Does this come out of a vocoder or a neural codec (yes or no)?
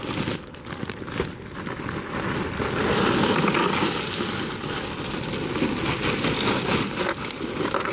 no